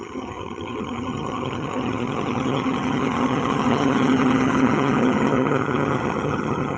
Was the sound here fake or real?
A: fake